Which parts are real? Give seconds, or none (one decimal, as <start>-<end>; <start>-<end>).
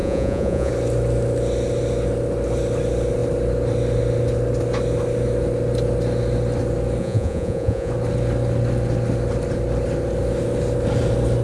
0.7-7.0; 7.9-11.4